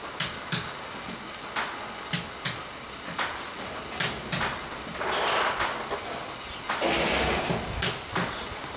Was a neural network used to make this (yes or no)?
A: no